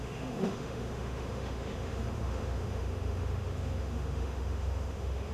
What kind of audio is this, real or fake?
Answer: fake